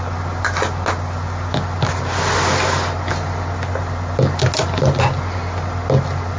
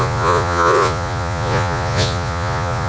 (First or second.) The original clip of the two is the first